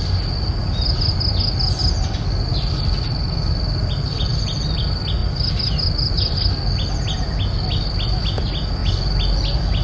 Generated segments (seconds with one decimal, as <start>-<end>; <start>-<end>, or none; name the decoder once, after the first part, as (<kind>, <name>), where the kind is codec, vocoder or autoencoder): none